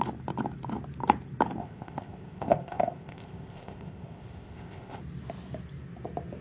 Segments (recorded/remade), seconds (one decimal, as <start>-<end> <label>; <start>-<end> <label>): 0.0-1.6 recorded; 1.6-5.0 remade; 5.0-6.4 recorded